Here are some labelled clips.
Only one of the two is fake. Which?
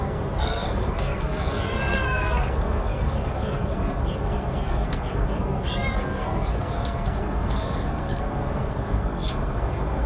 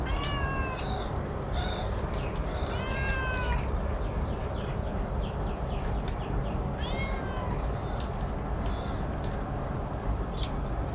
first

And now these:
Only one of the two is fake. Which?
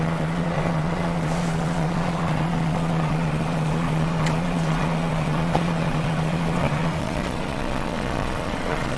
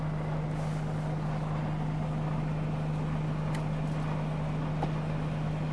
first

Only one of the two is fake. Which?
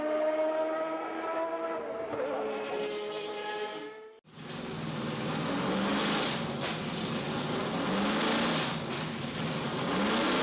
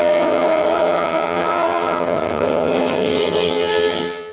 second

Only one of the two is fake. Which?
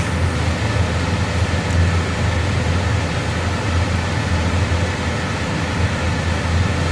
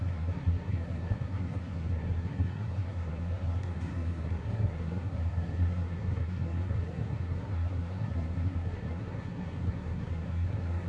second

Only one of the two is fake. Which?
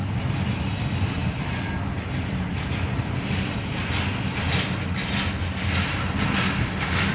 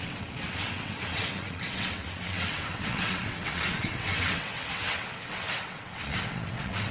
second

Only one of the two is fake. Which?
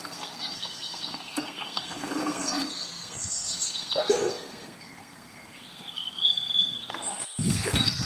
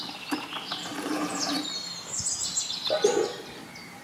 first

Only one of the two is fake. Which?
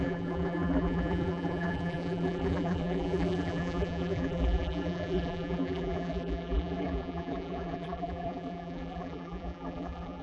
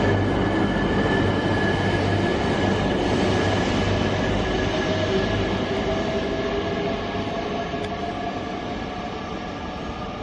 first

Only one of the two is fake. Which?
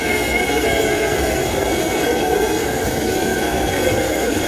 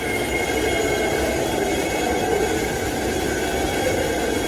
first